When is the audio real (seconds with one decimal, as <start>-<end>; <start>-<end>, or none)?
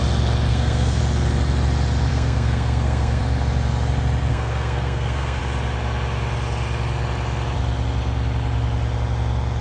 0.0-0.5; 1.0-2.1; 3.2-4.3; 5.4-9.6